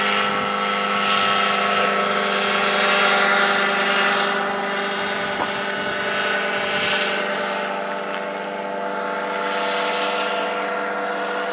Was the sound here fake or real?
real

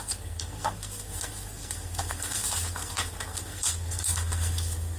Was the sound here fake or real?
fake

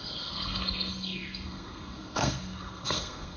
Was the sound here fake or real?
fake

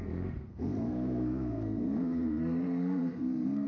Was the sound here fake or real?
fake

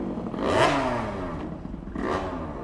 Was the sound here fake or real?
real